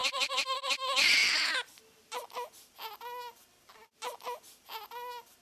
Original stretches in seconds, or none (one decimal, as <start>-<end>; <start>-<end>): 0.7-5.4